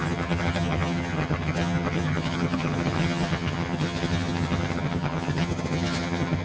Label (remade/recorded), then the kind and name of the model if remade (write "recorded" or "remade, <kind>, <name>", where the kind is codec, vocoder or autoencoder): remade, vocoder, HiFi-GAN